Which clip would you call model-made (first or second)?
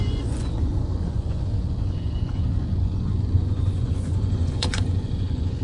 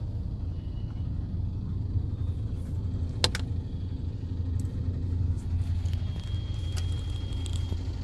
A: first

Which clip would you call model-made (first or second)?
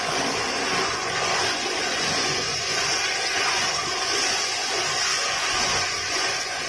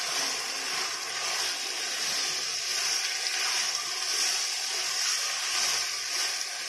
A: first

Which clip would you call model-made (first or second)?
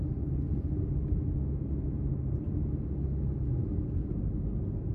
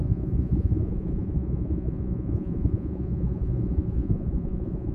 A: second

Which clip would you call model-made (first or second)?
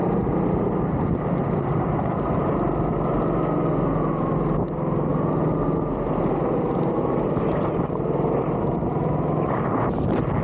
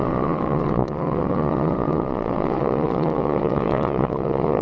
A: second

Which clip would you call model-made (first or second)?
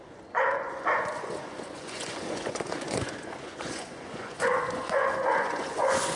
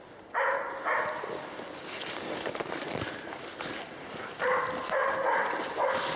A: first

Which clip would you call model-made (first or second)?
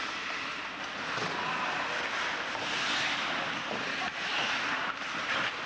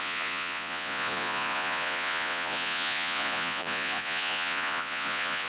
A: second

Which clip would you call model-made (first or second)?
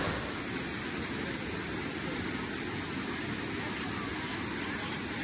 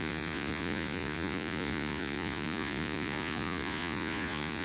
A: second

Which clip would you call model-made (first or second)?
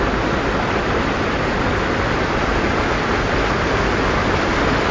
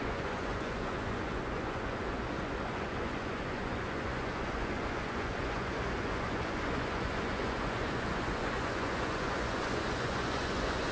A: second